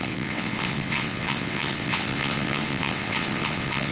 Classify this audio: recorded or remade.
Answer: remade